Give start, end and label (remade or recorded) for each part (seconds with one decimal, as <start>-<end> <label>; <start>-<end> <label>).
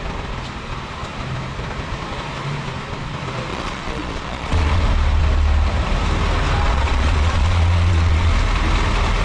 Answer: 0.0-3.5 recorded; 3.5-4.8 remade; 4.8-6.6 recorded; 6.6-8.3 remade; 8.3-9.2 recorded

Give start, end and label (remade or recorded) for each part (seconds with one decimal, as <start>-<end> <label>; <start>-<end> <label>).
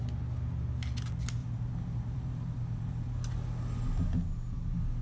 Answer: 0.0-1.4 recorded; 1.4-3.3 remade; 3.3-5.0 recorded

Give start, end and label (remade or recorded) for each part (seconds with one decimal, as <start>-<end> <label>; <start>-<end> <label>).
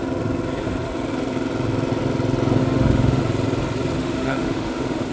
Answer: 0.0-2.6 recorded; 2.6-3.2 remade; 3.2-4.0 recorded; 4.0-5.1 remade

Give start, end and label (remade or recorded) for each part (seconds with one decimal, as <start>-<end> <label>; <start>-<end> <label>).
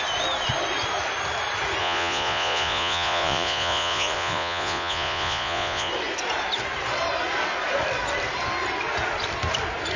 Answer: 0.0-1.8 recorded; 1.8-5.9 remade; 5.9-10.0 recorded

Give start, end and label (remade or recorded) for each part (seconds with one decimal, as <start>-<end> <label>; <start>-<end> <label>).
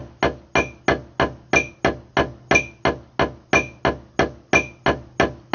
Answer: 0.0-5.5 recorded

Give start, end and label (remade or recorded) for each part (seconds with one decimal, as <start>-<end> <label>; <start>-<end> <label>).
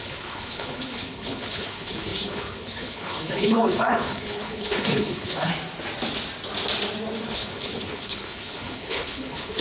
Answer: 0.0-5.5 remade; 5.5-7.2 recorded; 7.2-9.6 remade